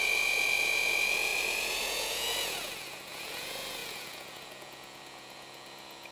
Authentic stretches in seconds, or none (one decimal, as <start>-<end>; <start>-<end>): none